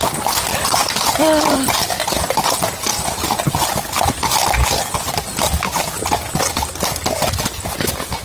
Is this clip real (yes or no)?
yes